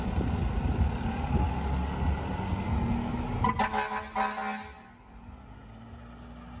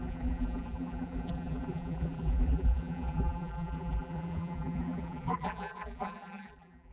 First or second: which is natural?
first